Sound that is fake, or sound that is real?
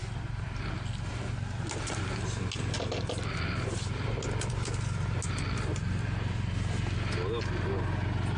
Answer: real